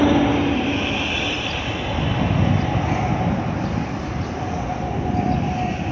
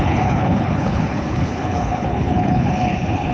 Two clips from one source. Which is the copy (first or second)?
second